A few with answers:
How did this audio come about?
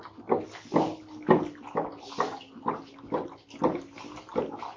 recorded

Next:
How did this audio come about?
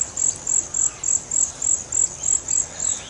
recorded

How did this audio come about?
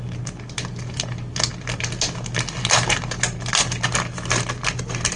recorded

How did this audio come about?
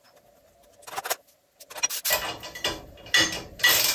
recorded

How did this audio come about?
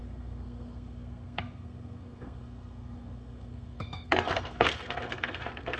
remade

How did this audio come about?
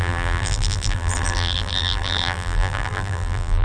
remade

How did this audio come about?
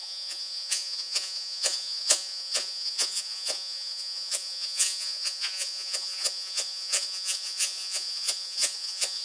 remade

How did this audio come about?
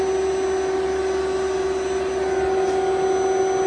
recorded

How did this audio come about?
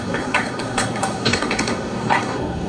remade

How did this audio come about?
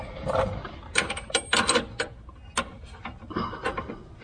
recorded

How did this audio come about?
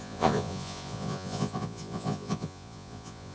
remade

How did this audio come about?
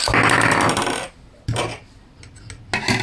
recorded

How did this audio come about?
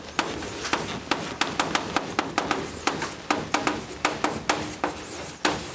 recorded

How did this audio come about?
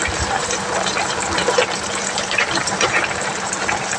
remade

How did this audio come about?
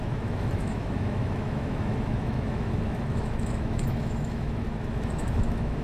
remade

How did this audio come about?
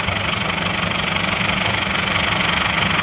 recorded